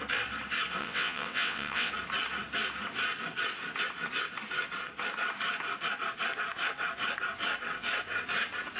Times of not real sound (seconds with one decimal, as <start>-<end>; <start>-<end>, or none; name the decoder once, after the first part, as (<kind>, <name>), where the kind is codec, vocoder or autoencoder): 0.8-1.9 (vocoder, WaveNeXt)